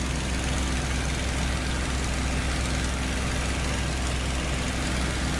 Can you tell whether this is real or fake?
real